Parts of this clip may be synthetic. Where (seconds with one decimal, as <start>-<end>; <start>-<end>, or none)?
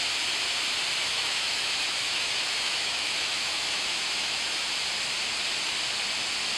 1.0-4.7